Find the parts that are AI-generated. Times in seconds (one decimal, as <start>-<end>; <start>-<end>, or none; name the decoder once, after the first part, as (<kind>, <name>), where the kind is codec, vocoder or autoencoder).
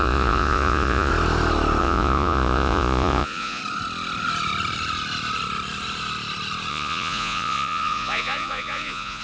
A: 0.0-1.1 (vocoder, Vocos); 1.8-3.6; 6.7-9.2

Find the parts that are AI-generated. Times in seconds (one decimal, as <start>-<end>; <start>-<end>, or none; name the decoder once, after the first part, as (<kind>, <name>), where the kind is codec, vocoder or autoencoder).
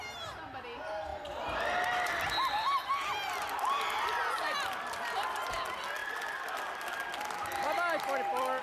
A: none